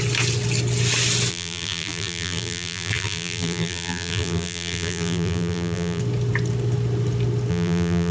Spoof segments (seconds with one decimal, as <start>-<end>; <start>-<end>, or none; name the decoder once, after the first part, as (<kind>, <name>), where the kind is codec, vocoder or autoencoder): 1.3-6.0 (vocoder, BigVGAN v2); 7.5-8.1

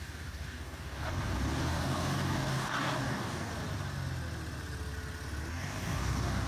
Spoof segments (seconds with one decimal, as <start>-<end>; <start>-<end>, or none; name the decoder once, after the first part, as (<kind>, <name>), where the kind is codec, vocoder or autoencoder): 0.0-3.5 (codec, DAC); 5.5-6.5

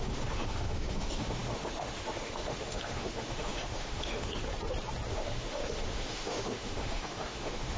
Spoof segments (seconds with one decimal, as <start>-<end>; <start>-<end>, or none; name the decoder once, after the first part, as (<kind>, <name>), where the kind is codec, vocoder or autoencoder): 0.0-4.4 (autoencoder, DAC-VAE); 5.1-7.8